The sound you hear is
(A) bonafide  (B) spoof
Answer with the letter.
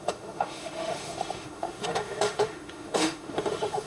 B